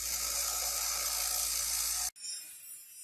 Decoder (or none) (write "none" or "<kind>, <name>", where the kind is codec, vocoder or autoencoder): none